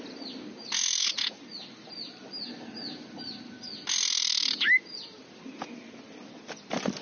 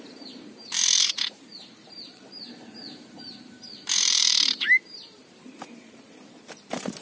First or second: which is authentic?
first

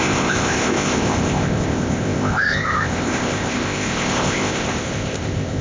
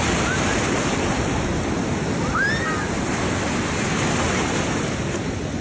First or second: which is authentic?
second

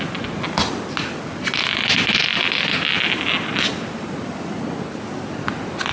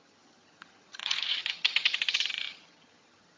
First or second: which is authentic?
first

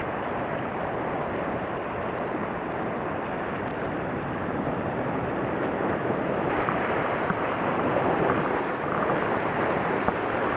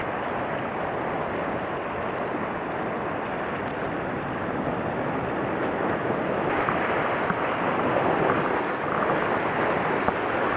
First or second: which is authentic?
second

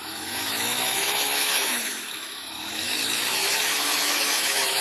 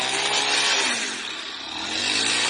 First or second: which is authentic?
second